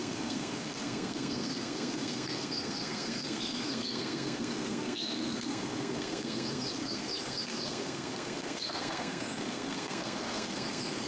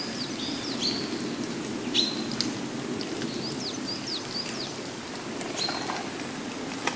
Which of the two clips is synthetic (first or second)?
first